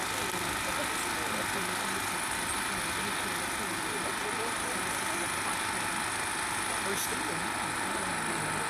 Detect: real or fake real